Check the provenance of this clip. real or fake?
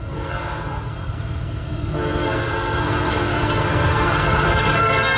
fake